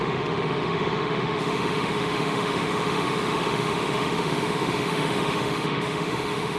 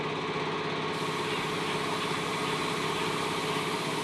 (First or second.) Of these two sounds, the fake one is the first